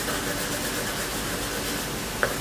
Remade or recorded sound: recorded